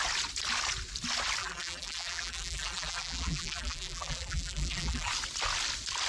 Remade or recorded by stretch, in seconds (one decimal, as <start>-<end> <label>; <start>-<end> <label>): 0.0-1.4 recorded; 1.4-5.1 remade; 5.1-6.1 recorded